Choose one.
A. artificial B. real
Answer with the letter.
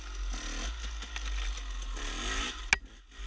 B